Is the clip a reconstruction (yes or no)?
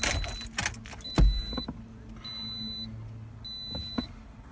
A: no